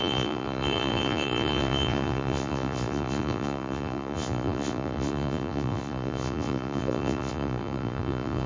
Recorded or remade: remade